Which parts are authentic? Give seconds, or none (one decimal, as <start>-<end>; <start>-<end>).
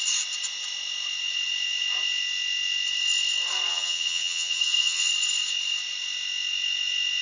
0.0-3.7; 5.1-7.2